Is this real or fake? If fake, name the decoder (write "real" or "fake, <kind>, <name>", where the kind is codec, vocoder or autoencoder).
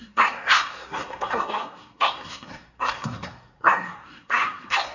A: fake, codec, SNAC